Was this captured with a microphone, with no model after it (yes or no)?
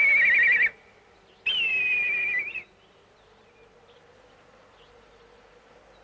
yes